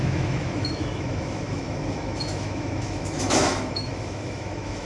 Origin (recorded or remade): remade